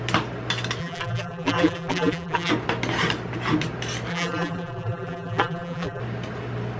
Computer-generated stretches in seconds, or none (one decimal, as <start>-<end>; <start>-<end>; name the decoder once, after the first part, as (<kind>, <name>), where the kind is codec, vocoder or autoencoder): 0.8-2.5 (vocoder, BigVGAN v2); 4.1-6.0